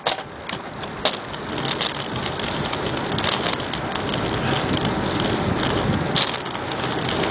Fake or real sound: real